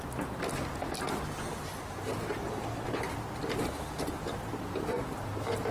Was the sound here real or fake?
real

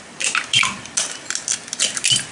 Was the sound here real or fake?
real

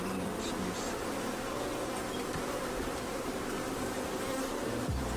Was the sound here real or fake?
fake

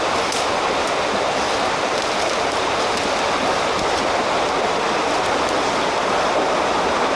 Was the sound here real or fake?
real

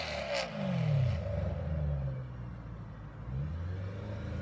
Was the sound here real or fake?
real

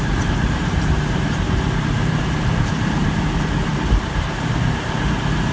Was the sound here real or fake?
fake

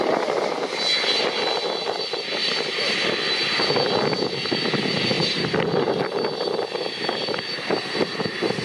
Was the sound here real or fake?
real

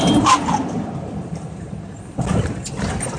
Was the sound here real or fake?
fake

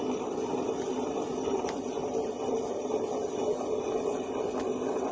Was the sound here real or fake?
real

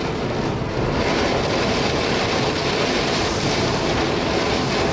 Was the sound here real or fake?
real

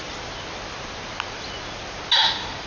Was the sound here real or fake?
real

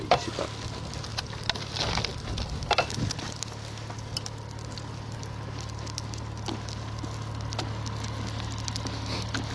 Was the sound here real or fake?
real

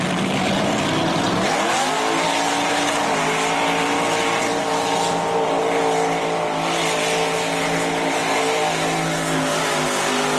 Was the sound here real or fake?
real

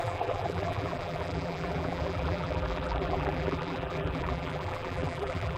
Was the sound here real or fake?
fake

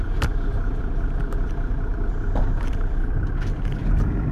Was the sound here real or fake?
fake